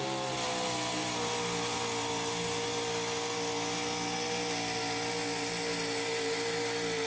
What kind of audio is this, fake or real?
real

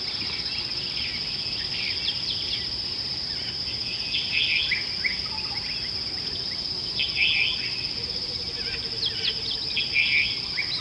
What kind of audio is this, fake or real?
real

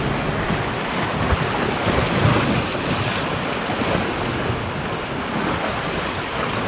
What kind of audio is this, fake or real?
real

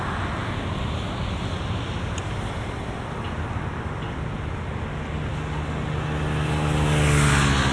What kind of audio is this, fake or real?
real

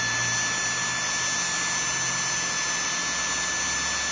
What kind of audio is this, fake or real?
real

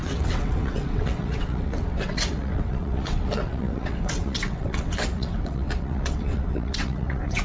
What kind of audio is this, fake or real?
fake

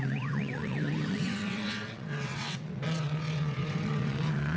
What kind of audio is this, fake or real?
fake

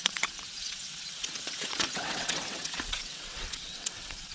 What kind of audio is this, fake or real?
fake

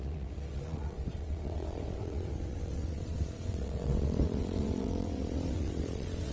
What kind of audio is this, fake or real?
fake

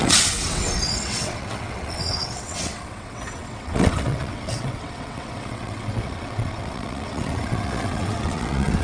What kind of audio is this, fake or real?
fake